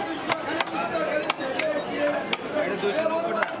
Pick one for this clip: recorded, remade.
recorded